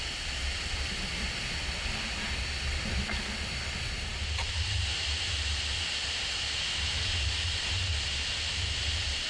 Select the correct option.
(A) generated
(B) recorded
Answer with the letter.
B